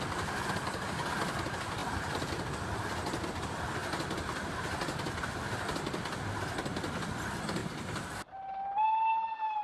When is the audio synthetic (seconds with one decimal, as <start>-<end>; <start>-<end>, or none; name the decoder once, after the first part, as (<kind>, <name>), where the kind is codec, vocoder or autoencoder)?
none